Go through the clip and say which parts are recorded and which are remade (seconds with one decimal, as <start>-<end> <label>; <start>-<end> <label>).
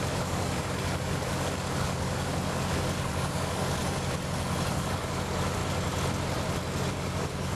0.0-3.8 remade; 3.8-4.7 recorded; 4.7-5.6 remade; 5.6-6.9 recorded; 6.9-7.6 remade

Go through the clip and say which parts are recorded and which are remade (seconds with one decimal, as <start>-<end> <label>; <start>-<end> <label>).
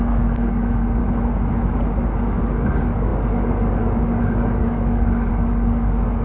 0.0-1.0 remade; 1.0-2.4 recorded; 2.4-6.2 remade